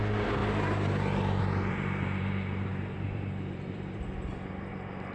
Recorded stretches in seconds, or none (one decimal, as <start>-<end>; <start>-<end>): none